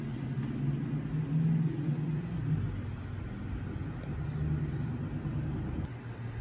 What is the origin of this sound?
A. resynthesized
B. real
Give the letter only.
B